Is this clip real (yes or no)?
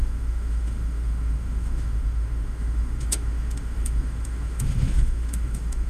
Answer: no